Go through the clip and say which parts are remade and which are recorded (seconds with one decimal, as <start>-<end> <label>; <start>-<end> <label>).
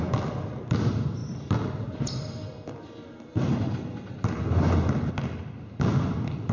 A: 0.0-6.5 recorded